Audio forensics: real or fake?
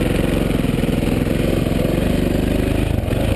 real